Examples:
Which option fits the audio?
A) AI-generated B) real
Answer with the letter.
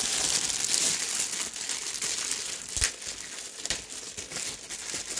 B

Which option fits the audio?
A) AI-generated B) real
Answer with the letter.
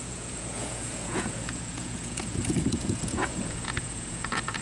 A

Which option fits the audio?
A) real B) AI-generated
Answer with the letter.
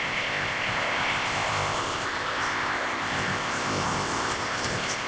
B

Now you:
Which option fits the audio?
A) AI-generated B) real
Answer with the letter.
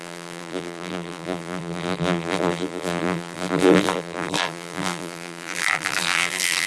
A